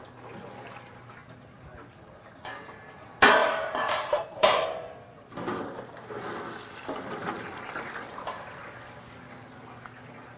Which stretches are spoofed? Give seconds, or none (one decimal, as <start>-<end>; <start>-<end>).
3.4-6.2